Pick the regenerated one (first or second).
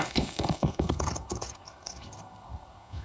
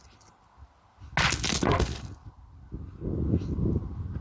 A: first